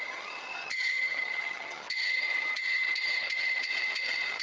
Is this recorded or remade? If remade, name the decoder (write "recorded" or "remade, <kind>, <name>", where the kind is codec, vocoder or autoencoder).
remade, vocoder, HiFi-GAN